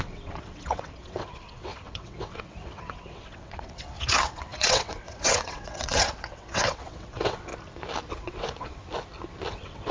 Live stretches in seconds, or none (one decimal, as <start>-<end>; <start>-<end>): 7.5-8.1; 8.8-9.5